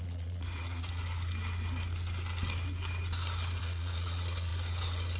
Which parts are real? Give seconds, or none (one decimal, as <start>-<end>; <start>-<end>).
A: 1.0-3.6; 4.5-5.2